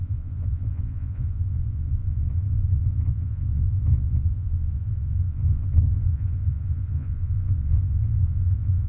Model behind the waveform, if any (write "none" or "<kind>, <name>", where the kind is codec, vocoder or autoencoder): vocoder, Vocos